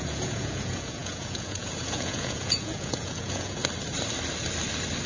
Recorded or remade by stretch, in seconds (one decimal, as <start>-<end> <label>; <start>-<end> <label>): 0.0-3.6 remade; 3.6-5.1 recorded